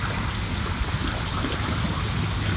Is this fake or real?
real